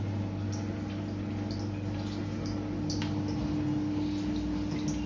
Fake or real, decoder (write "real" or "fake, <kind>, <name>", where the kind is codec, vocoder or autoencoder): real